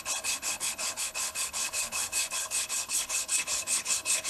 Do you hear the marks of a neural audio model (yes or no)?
yes